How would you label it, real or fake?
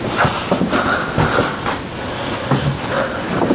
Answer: real